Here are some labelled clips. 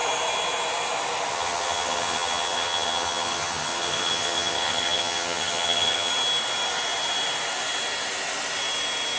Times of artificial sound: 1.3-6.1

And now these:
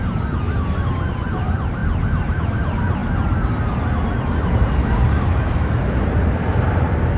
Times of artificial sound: none

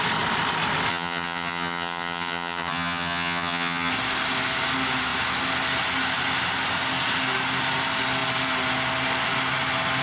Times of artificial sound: 0.9-3.9